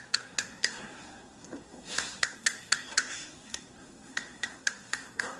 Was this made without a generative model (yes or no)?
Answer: no